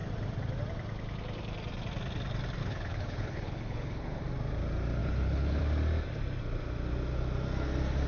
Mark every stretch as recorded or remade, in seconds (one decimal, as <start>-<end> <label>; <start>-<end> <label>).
0.0-2.6 recorded; 2.6-4.2 remade; 4.2-5.0 recorded; 5.0-5.6 remade; 5.6-8.1 recorded